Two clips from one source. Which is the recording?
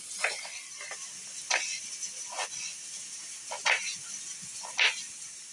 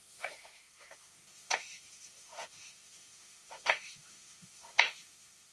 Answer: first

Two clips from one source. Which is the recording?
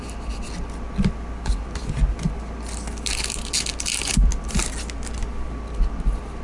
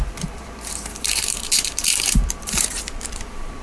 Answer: first